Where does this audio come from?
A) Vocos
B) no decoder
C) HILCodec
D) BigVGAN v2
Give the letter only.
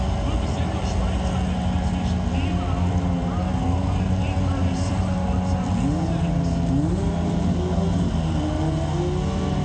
B